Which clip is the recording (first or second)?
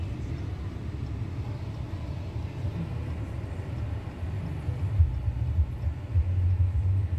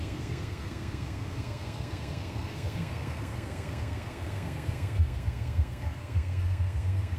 first